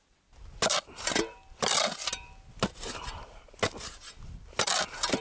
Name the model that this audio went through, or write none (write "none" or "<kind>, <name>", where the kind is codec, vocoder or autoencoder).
none